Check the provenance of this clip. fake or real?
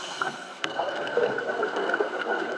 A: fake